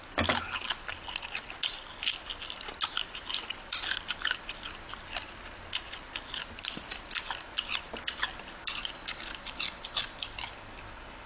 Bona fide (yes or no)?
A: yes